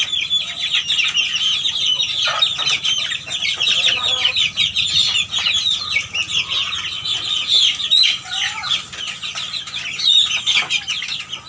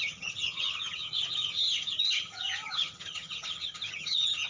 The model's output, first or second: second